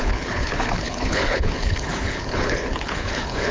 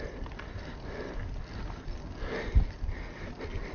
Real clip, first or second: second